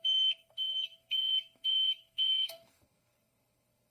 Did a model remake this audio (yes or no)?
yes